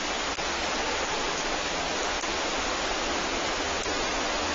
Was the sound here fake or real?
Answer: real